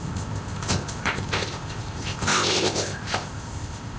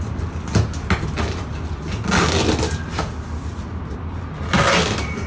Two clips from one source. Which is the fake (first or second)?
first